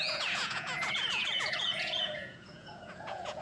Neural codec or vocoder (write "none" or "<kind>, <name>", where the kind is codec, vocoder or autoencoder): vocoder, Vocos